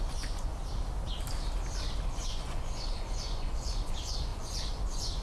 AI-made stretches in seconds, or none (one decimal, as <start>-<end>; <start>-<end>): 0.0-0.5; 2.1-5.2